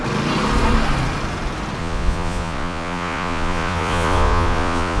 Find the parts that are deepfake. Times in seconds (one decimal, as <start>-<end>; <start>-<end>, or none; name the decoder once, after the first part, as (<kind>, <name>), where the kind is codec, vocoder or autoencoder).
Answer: 1.8-5.0 (vocoder, Vocos)